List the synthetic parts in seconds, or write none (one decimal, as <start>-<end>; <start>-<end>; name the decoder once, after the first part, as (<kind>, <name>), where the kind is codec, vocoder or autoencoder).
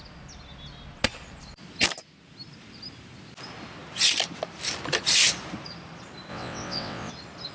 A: 6.3-7.1 (vocoder, WaveNeXt)